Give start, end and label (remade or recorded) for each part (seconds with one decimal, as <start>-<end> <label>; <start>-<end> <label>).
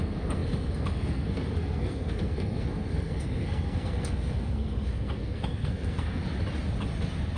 0.0-6.2 remade; 6.2-7.4 recorded